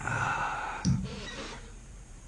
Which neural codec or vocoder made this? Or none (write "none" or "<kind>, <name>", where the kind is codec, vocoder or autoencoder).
vocoder, BigVGAN v2